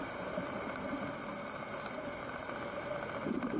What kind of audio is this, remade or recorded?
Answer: recorded